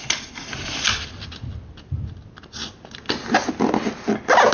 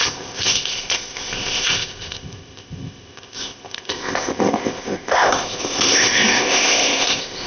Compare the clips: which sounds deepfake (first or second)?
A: second